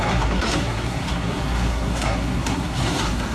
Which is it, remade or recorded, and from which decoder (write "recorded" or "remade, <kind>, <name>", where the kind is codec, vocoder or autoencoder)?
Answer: remade, codec, SNAC